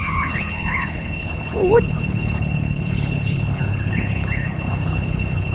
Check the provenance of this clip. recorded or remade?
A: remade